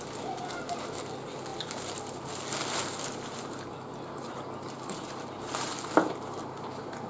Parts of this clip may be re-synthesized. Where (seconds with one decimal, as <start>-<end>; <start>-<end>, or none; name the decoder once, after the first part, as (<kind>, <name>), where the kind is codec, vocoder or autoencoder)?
none